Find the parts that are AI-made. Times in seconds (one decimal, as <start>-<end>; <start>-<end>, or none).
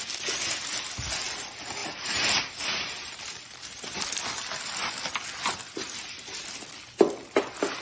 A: 1.8-4.0